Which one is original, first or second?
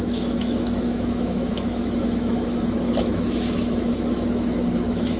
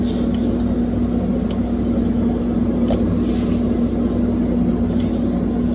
second